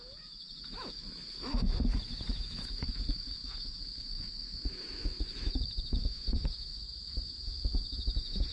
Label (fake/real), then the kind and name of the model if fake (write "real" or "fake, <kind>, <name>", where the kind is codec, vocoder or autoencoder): fake, autoencoder, DAC-VAE